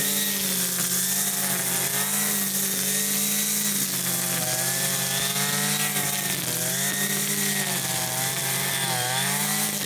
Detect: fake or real real